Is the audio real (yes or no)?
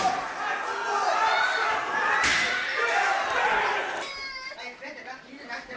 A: yes